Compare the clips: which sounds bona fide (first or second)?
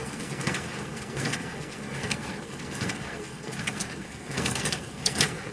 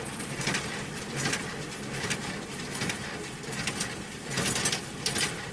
second